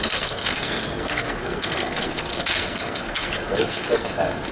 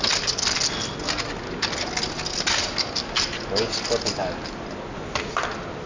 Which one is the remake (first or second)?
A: first